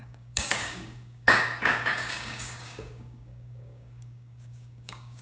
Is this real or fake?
fake